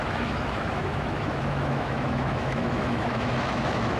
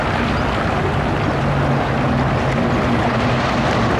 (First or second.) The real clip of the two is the second